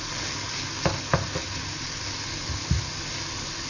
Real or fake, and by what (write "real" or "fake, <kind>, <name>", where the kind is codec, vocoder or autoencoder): real